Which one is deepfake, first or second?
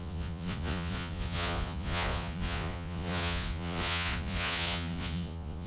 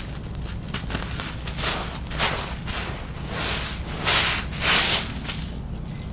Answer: first